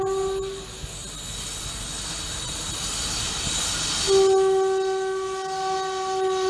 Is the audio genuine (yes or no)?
yes